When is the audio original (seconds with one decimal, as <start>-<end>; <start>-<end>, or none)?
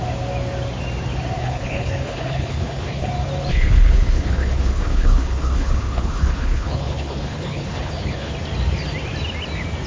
0.0-1.4; 3.1-3.5; 8.3-9.9